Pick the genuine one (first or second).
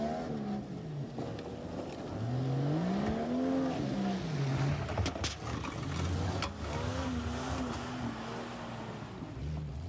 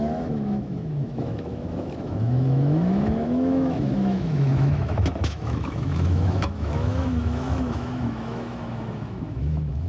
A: first